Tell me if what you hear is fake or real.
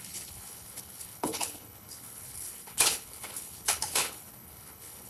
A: fake